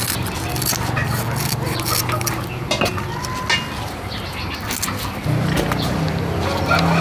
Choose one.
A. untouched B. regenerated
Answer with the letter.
A